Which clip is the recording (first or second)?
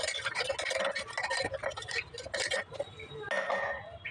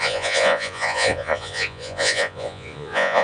first